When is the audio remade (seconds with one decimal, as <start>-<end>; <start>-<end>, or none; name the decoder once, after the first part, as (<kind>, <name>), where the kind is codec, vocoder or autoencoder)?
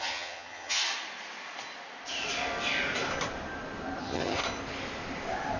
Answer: 0.0-0.8 (vocoder, HiFi-GAN); 4.0-4.4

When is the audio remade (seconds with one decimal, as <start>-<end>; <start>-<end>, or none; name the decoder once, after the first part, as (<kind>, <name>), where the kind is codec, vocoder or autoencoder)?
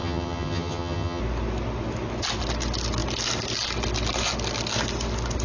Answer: 0.0-1.2 (vocoder, HiFi-GAN)